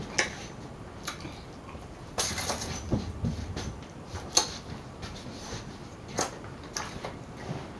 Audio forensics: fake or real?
real